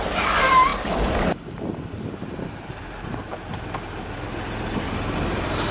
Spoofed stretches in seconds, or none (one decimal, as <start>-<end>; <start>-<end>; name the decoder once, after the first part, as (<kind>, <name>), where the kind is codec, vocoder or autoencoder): none